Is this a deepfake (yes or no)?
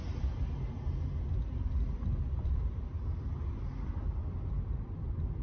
no